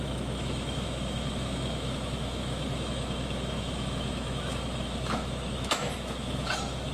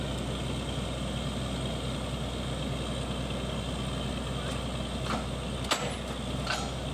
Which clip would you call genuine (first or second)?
second